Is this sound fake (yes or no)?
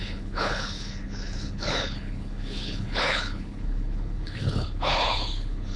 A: yes